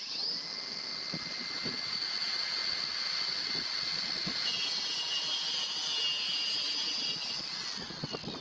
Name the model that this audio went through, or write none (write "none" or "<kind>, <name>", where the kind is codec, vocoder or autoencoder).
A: none